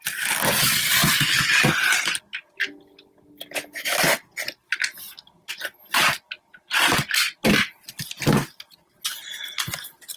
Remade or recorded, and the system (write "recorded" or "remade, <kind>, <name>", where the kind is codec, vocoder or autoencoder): recorded